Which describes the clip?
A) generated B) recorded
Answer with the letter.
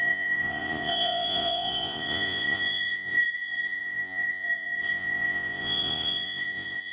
A